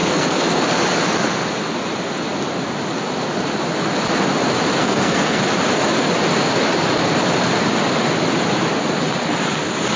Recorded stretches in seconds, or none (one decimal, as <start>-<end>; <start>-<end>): 0.6-4.8; 5.4-10.0